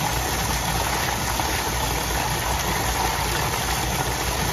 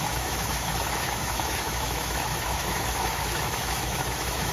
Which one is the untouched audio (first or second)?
first